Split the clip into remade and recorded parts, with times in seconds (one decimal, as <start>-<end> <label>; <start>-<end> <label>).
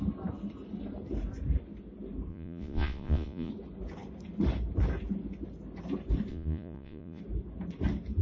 0.0-2.3 recorded; 2.3-3.5 remade; 3.5-6.3 recorded; 6.3-7.2 remade; 7.2-8.2 recorded